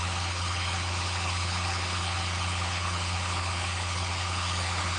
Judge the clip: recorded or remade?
remade